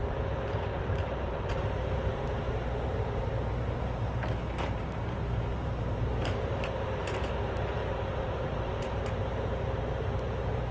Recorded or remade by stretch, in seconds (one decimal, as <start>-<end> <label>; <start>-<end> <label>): 0.0-1.5 recorded; 1.5-10.7 remade